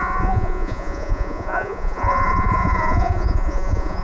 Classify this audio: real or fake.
fake